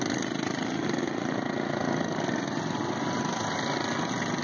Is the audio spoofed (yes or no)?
no